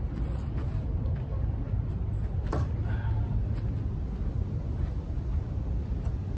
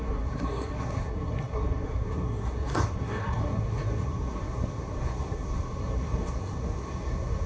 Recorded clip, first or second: first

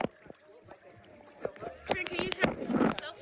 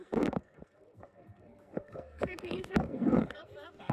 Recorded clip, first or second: first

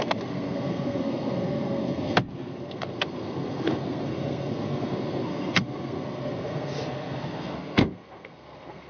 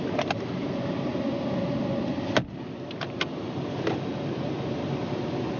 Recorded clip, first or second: second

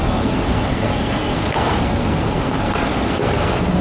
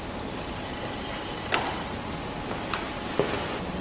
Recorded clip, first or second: second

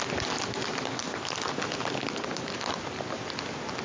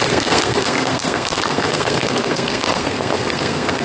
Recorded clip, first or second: first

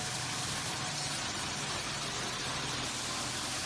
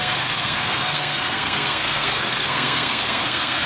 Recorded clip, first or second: first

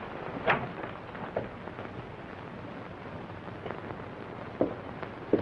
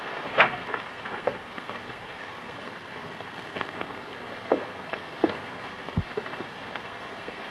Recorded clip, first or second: first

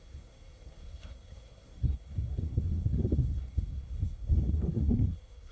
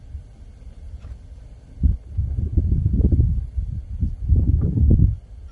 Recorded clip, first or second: second